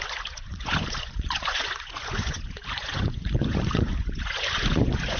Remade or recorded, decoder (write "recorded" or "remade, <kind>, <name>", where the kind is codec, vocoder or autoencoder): remade, vocoder, Vocos